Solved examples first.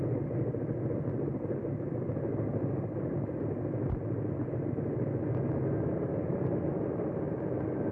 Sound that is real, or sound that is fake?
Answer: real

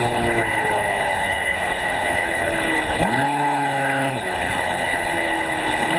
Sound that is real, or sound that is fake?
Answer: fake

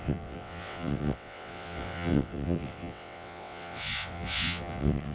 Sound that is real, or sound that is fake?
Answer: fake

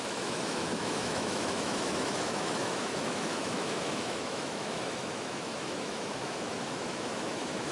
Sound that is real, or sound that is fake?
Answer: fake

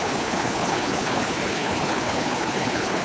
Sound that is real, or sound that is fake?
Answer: fake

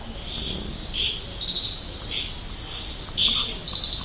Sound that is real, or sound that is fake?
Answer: real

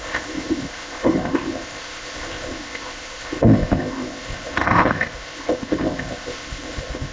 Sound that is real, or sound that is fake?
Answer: fake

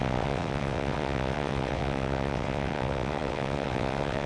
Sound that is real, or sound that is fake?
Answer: fake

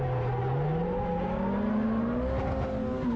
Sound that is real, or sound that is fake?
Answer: real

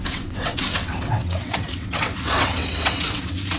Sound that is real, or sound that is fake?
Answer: fake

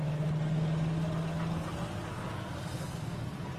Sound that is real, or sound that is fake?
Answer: real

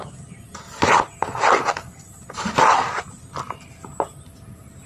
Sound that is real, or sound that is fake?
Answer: real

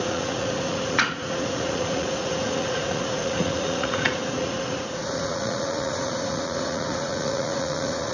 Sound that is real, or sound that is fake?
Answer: fake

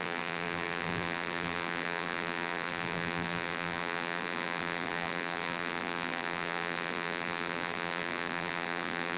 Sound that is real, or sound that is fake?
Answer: fake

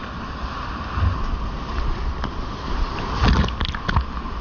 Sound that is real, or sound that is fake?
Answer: real